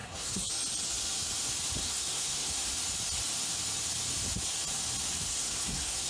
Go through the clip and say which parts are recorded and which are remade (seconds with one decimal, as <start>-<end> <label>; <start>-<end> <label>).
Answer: 0.0-0.5 remade; 0.5-1.8 recorded; 1.8-2.7 remade; 2.7-5.3 recorded; 5.3-6.1 remade

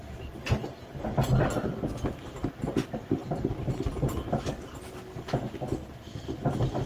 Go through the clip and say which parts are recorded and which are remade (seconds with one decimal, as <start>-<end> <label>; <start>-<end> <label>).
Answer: 0.0-6.9 recorded

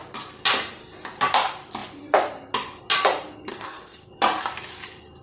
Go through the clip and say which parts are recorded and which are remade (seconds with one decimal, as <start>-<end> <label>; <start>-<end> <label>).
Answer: 0.0-3.5 recorded; 3.5-4.1 remade; 4.1-5.2 recorded

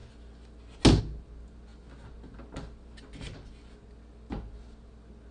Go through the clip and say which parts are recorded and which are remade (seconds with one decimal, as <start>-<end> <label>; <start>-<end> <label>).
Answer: 0.0-5.3 recorded

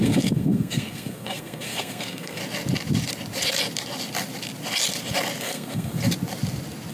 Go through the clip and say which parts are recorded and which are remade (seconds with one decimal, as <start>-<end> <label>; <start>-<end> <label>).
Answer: 0.0-2.4 remade; 2.4-5.4 recorded; 5.4-6.0 remade; 6.0-6.9 recorded

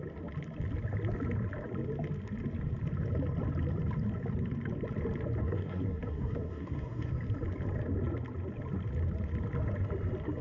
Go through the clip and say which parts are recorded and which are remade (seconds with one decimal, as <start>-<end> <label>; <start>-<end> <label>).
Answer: 0.0-5.4 recorded; 5.4-7.1 remade; 7.1-10.4 recorded

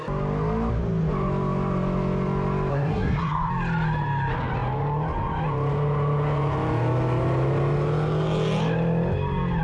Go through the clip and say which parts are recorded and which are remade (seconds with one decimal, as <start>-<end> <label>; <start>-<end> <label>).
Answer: 0.0-2.7 recorded; 2.7-3.5 remade; 3.5-9.6 recorded

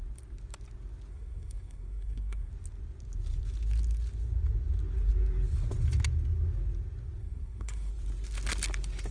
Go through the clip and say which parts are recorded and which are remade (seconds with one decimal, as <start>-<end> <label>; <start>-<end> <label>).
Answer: 0.0-1.1 recorded; 1.1-2.5 remade; 2.5-7.2 recorded; 7.2-7.9 remade; 7.9-9.1 recorded